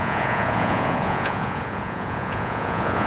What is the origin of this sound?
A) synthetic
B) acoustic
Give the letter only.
A